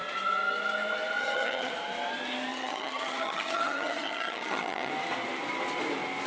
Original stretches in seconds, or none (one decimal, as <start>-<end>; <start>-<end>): 0.0-1.2; 1.7-2.5; 4.9-6.3